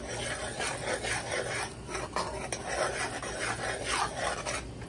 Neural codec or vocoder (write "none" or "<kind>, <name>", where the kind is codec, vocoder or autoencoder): none